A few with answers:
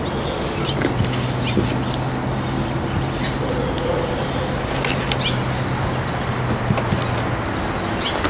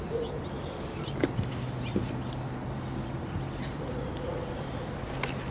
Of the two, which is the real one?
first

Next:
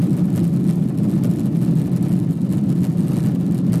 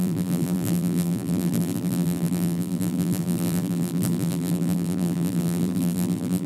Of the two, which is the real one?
first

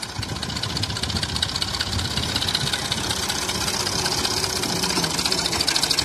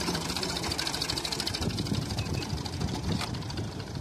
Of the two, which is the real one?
first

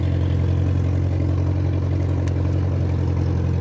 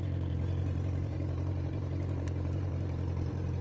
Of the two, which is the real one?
first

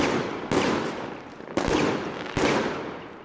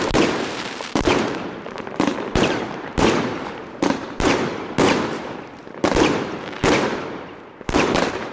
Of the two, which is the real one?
first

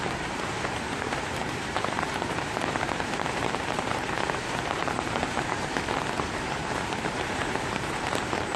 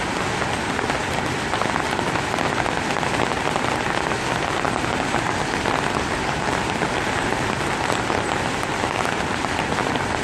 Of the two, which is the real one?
second